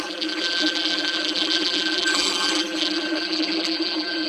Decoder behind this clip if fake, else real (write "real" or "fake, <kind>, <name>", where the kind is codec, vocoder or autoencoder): fake, vocoder, BigVGAN v2